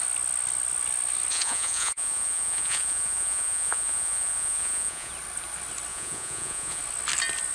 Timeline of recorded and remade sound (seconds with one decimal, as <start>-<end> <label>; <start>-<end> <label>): 0.0-1.3 recorded; 1.3-5.1 remade; 5.1-5.9 recorded; 5.9-6.8 remade; 6.8-7.5 recorded